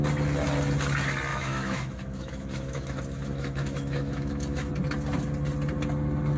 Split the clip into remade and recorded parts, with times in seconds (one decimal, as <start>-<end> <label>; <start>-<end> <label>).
0.0-1.3 recorded; 1.3-4.7 remade; 4.7-6.4 recorded